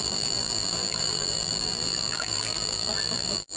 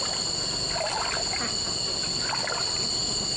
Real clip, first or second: second